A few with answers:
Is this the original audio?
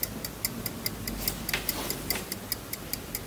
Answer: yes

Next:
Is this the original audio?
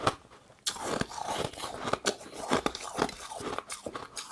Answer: yes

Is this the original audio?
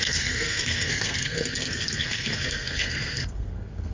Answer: no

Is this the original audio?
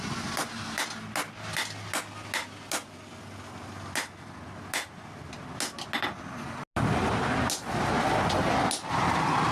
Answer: yes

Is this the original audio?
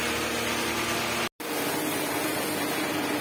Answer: yes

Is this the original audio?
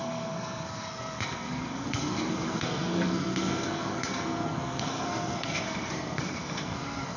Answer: no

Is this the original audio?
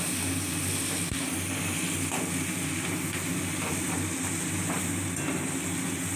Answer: yes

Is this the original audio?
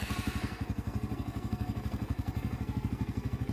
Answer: no